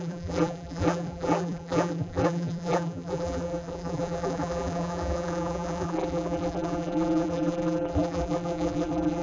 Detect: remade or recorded remade